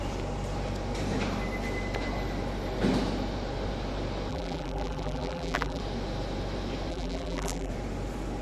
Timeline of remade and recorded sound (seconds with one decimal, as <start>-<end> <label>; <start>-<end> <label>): 0.0-4.3 recorded; 4.3-5.8 remade; 5.8-6.9 recorded; 6.9-7.7 remade; 7.7-8.4 recorded